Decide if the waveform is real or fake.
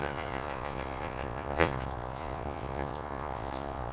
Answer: fake